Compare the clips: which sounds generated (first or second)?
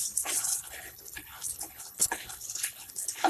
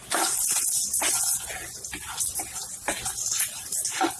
first